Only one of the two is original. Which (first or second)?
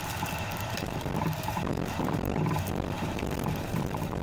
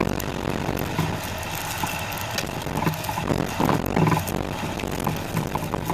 second